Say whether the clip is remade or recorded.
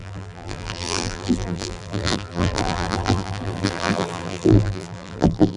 remade